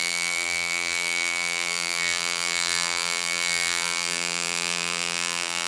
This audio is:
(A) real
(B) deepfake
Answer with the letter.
B